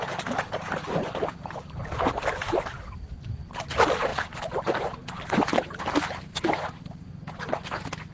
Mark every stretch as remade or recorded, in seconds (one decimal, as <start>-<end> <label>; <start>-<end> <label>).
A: 0.0-8.1 recorded